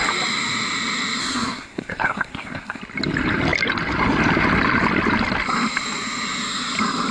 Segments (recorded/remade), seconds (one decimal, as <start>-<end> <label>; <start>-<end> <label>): 0.0-1.2 recorded; 1.2-2.8 remade; 2.8-7.1 recorded

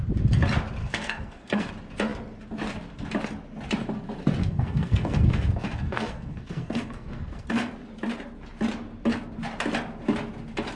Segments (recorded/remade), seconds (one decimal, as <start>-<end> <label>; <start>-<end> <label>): 0.0-0.8 recorded; 0.8-1.7 remade; 1.7-4.4 recorded; 4.4-7.7 remade; 7.7-10.8 recorded

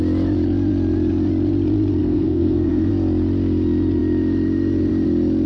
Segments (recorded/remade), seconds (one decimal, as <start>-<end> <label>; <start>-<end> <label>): 0.0-2.0 recorded; 2.0-2.9 remade; 2.9-5.5 recorded

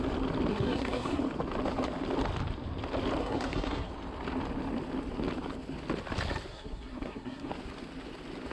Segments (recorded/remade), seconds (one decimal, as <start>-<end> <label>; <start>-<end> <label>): 0.0-0.5 recorded; 0.5-1.2 remade; 1.2-3.2 recorded; 3.2-3.9 remade; 3.9-6.5 recorded; 6.5-7.5 remade; 7.5-8.5 recorded

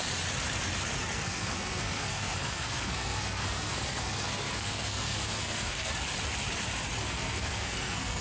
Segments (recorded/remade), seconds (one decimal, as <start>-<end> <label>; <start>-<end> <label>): 0.0-1.0 recorded; 1.0-5.9 remade; 5.9-7.0 recorded; 7.0-8.2 remade

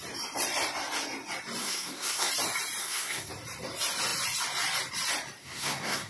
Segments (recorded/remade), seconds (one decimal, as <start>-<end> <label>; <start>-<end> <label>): 0.0-1.6 recorded; 1.6-2.3 remade; 2.3-2.8 recorded; 2.8-3.3 remade; 3.3-5.4 recorded; 5.4-6.1 remade

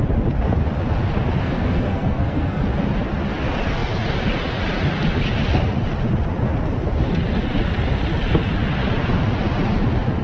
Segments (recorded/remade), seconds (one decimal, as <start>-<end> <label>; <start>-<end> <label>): 0.0-1.4 recorded; 1.4-2.6 remade; 2.6-10.2 recorded